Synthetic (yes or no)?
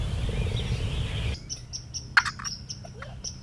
no